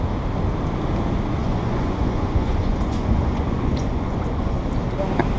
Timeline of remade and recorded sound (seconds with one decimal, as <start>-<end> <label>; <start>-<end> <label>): 0.0-1.4 recorded; 1.4-4.6 remade; 4.6-5.4 recorded